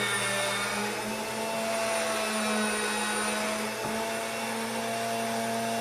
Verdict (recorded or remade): recorded